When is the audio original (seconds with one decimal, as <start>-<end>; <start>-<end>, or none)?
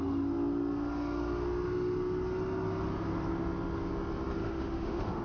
0.0-4.4